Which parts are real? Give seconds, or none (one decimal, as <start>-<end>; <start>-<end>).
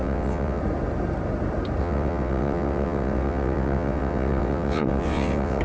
0.6-1.8